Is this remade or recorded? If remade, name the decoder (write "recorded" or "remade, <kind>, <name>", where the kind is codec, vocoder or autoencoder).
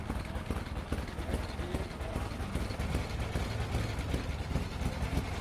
recorded